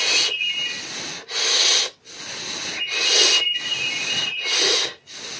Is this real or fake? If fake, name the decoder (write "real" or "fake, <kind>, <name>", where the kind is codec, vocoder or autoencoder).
real